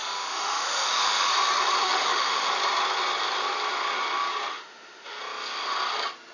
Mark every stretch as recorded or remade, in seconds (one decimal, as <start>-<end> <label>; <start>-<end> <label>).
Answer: 0.0-1.3 remade; 1.3-1.8 recorded; 1.8-2.5 remade; 2.5-4.5 recorded; 4.5-5.2 remade; 5.2-6.3 recorded